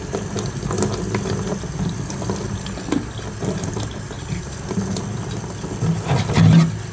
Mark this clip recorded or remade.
recorded